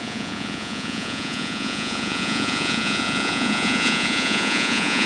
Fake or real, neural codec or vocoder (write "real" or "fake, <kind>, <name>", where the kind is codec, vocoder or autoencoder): fake, vocoder, Vocos